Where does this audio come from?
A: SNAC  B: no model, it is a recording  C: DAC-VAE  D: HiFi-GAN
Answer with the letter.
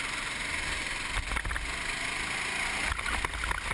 B